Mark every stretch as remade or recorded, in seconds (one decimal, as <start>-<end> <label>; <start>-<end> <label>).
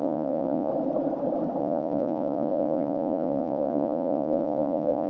0.0-0.7 remade; 0.7-1.6 recorded; 1.6-5.1 remade